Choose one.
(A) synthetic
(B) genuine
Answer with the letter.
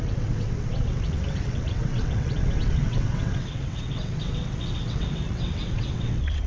A